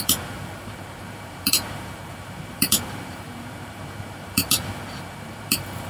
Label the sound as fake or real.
fake